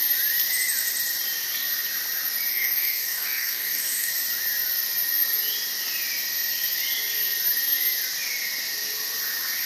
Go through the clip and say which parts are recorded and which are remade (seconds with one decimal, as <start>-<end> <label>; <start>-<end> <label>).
0.0-2.5 recorded; 2.5-4.1 remade; 4.1-9.7 recorded